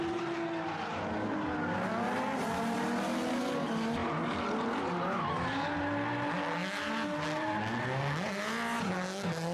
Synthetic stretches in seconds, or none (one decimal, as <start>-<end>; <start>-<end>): none